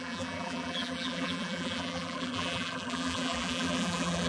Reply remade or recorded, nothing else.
remade